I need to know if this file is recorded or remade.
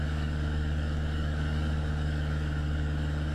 remade